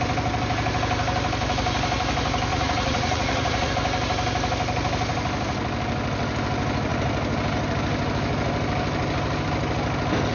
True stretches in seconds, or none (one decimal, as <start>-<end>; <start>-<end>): 0.0-2.5; 3.7-10.3